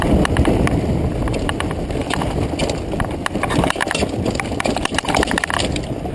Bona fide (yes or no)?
yes